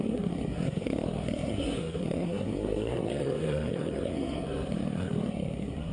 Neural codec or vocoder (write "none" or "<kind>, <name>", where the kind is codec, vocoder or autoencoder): codec, SNAC